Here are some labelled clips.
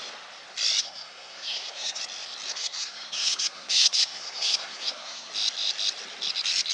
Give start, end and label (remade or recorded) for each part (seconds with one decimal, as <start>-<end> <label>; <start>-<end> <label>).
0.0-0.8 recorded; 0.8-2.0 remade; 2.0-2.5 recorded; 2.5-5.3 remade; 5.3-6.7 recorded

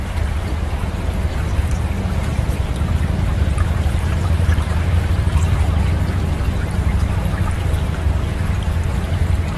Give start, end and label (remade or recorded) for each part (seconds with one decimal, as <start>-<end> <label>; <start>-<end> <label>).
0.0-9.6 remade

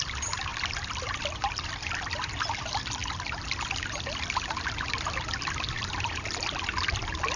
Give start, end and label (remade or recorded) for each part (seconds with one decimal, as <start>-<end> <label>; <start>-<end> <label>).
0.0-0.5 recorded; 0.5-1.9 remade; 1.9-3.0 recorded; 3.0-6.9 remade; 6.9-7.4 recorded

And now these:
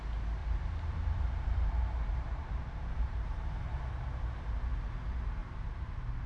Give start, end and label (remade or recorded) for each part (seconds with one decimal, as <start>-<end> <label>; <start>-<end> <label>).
0.0-0.4 recorded; 0.4-3.9 remade; 3.9-5.4 recorded; 5.4-6.3 remade

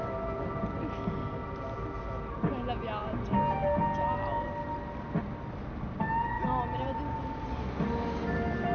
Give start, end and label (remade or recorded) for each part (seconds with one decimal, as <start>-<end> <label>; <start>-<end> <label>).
0.0-8.7 recorded

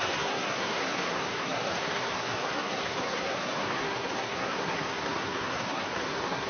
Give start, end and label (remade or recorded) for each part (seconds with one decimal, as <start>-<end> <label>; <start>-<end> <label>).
0.0-6.5 remade